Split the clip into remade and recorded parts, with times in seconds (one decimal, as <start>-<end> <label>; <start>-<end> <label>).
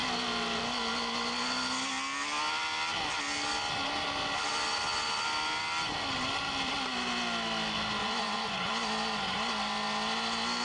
0.0-8.0 recorded; 8.0-8.7 remade; 8.7-10.6 recorded